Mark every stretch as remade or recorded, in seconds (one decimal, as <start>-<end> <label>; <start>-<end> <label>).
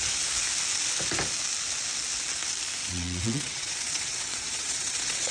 0.0-2.8 recorded; 2.8-5.3 remade